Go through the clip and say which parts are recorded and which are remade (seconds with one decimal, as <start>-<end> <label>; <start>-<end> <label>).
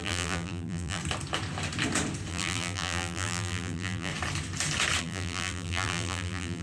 0.0-1.0 remade; 1.0-2.3 recorded; 2.3-4.1 remade; 4.1-5.0 recorded; 5.0-6.6 remade